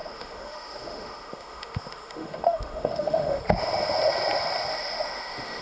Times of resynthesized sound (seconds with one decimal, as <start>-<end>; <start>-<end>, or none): 0.0-3.4; 4.7-5.6